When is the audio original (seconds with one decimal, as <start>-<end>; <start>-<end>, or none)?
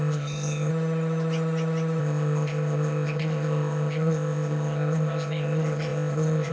0.7-2.0